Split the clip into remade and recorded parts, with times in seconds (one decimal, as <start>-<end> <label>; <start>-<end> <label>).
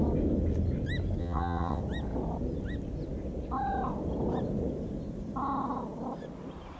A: 0.0-1.2 recorded; 1.2-1.8 remade; 1.8-6.8 recorded